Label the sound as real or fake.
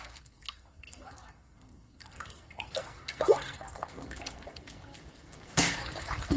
fake